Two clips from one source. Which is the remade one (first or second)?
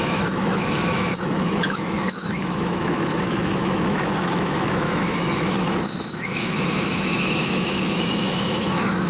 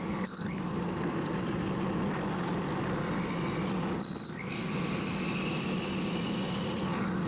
first